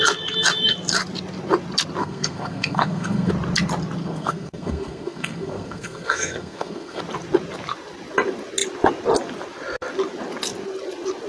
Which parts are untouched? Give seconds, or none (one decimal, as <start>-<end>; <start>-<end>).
0.0-2.0; 3.3-4.0; 7.0-11.3